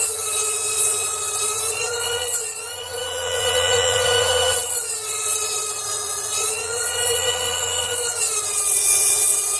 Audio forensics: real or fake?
fake